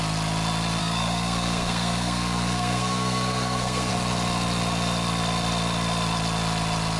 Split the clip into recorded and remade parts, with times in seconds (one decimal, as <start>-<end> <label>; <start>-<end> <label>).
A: 0.0-0.8 recorded; 0.8-3.9 remade; 3.9-7.0 recorded